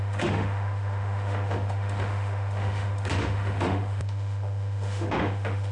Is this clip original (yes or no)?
no